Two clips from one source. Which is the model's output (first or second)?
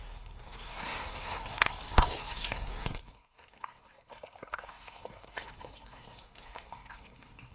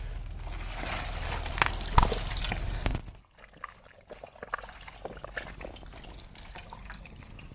first